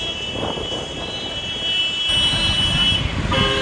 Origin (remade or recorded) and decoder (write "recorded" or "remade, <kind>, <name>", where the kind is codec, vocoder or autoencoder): recorded